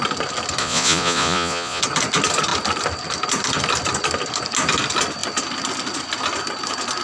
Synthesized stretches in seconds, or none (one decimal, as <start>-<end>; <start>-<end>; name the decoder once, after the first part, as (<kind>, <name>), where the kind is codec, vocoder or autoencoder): 0.6-1.8 (vocoder, Vocos)